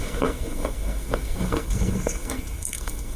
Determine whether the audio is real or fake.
fake